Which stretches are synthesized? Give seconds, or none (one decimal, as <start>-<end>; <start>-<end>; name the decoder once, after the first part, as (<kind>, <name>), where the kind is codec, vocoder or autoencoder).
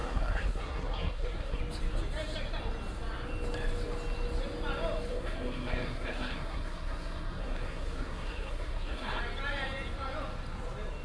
0.0-1.6 (codec, SNAC); 5.1-9.2